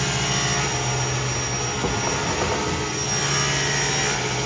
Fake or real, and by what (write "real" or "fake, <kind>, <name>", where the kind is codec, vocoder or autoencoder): real